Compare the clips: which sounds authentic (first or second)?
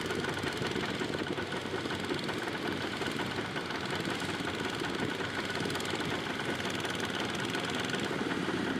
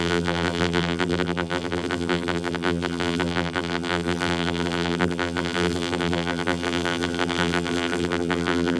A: first